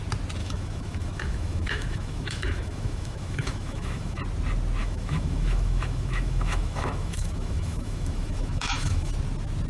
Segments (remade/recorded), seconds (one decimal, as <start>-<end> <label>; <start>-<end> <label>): 0.0-0.4 recorded; 0.4-4.2 remade; 4.2-4.8 recorded; 4.8-9.1 remade; 9.1-9.7 recorded